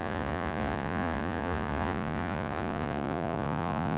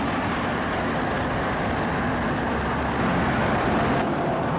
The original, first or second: second